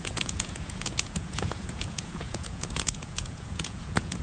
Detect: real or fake fake